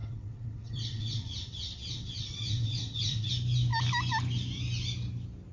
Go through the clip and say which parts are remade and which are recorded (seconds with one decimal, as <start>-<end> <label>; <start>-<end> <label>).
0.0-3.3 remade; 3.3-5.5 recorded